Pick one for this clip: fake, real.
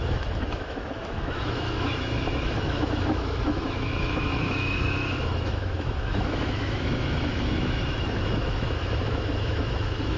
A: fake